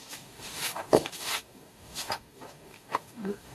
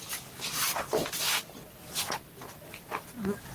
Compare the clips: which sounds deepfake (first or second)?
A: first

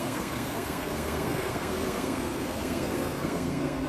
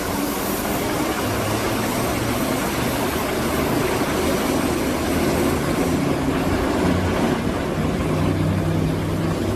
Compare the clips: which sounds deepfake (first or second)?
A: first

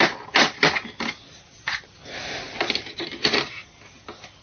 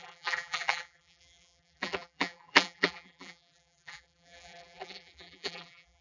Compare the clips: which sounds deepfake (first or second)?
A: second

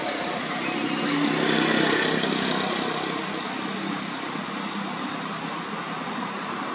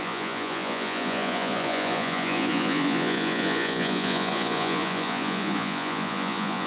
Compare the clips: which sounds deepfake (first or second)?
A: second